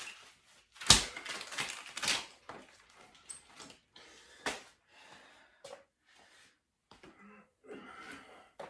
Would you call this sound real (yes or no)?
yes